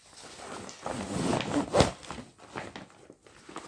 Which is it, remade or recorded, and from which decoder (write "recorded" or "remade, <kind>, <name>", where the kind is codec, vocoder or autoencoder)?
recorded